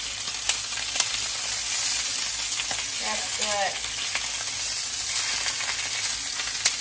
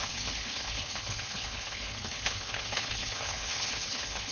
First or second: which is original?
first